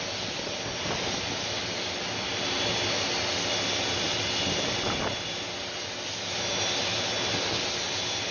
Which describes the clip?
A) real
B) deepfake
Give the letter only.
A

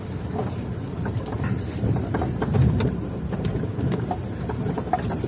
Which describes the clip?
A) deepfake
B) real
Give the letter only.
A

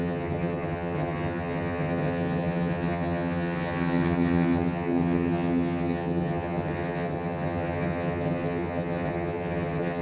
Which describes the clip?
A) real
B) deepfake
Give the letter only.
B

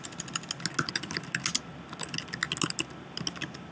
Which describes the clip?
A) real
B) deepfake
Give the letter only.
A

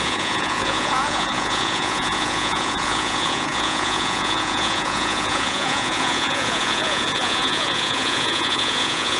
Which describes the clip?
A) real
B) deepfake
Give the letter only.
B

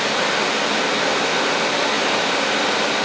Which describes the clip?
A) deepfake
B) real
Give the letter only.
B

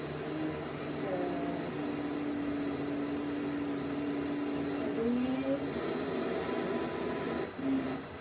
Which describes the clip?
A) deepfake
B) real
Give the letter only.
B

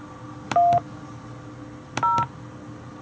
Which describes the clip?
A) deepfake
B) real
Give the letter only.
B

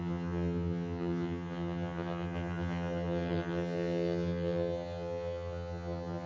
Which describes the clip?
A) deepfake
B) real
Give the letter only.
A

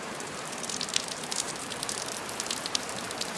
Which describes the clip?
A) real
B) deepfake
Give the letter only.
B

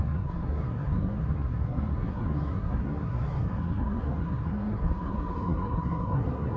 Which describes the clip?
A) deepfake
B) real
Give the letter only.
A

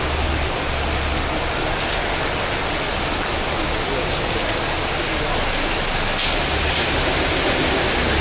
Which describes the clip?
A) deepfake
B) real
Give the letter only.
B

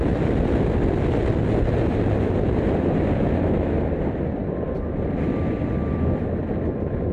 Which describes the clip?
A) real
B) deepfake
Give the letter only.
A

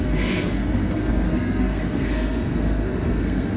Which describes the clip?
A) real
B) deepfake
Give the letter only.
B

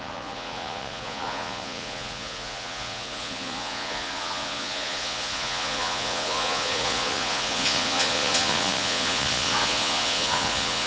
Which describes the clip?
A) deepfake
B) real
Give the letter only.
A